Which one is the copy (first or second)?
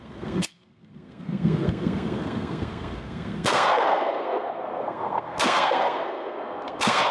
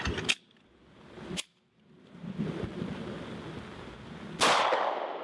first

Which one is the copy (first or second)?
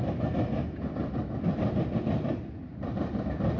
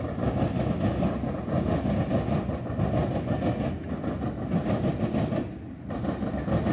first